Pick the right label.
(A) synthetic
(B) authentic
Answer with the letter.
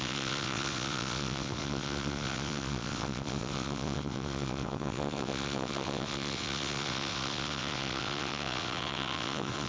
A